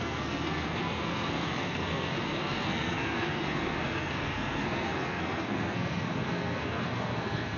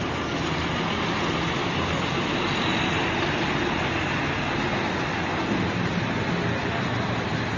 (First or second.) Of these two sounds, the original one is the second